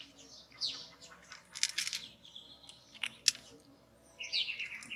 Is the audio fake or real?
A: real